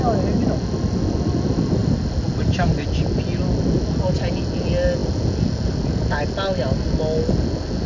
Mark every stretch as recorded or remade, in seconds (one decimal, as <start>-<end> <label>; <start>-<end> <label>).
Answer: 0.0-7.9 recorded